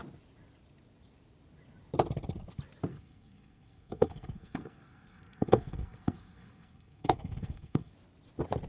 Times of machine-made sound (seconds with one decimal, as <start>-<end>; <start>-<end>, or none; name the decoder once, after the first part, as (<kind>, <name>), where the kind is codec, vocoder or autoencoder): 2.9-7.9 (codec, SNAC)